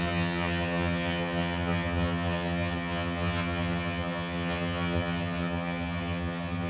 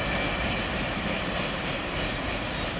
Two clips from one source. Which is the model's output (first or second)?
first